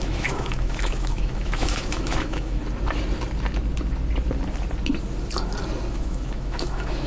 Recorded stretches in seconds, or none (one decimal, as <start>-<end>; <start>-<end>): 2.6-5.9